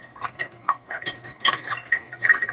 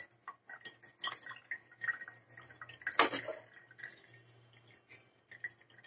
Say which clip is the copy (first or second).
first